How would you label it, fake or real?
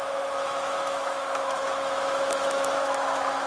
fake